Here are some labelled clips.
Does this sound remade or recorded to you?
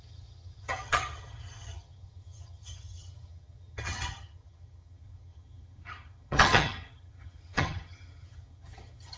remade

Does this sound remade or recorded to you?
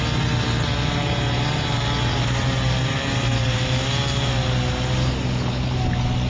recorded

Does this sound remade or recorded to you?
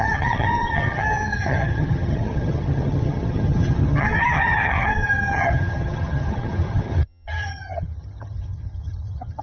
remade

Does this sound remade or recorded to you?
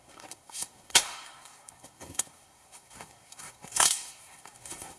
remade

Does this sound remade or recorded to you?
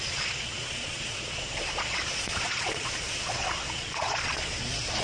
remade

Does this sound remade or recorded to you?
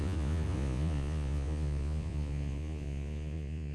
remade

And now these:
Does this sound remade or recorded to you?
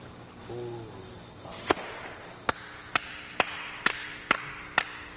recorded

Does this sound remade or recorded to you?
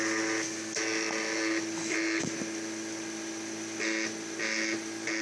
recorded